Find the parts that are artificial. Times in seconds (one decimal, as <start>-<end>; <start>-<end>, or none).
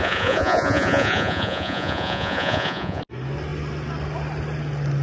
0.0-3.0